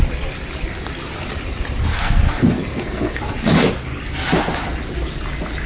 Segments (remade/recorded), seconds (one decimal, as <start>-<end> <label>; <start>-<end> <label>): 0.0-1.9 recorded; 1.9-3.2 remade; 3.2-5.7 recorded